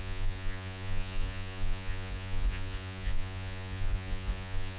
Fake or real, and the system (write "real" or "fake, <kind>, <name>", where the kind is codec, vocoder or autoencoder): fake, vocoder, Vocos